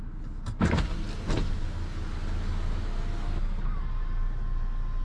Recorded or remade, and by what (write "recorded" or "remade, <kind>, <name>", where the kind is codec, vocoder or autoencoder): recorded